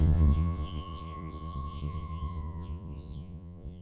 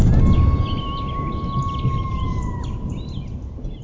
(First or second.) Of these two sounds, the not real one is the first